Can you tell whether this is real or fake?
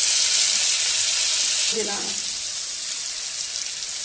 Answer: real